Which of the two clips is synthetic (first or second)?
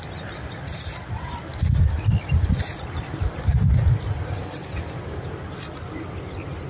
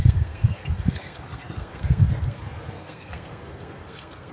second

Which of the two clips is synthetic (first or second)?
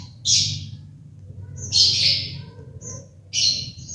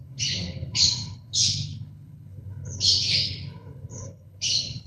second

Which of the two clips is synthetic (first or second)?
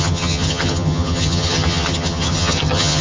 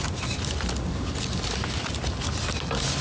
first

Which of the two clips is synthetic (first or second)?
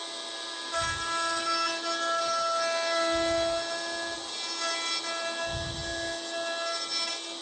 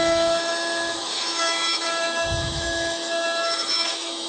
second